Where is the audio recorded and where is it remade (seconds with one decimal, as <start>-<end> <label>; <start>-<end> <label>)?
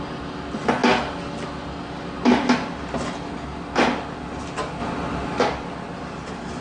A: 0.0-6.6 recorded